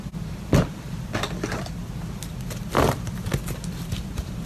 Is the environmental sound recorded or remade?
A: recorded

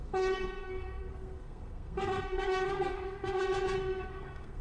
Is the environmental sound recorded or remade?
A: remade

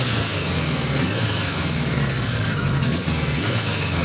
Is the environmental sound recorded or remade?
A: remade